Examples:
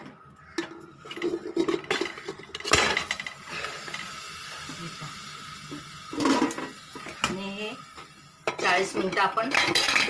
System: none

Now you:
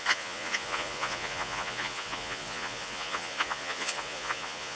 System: vocoder, Vocos